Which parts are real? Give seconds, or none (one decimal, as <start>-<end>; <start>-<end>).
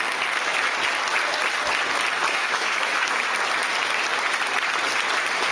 0.0-2.4; 3.3-5.5